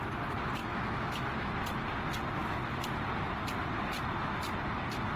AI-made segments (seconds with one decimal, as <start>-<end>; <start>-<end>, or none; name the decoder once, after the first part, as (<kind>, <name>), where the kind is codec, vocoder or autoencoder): 0.6-1.5 (autoencoder, DAC-VAE)